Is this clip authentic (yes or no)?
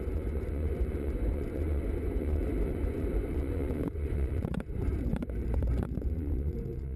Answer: no